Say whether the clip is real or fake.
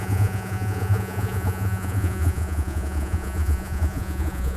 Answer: fake